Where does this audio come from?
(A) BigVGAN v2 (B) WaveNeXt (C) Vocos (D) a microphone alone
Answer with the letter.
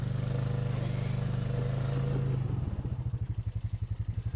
D